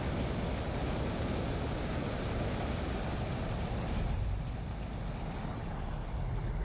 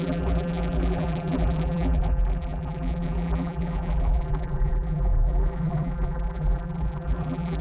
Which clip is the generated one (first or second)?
second